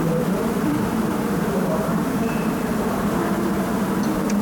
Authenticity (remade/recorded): remade